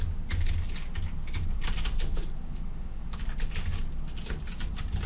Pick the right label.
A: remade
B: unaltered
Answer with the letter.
B